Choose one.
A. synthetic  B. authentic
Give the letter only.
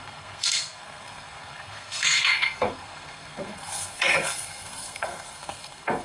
A